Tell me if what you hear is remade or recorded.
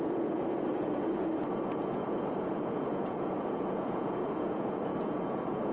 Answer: remade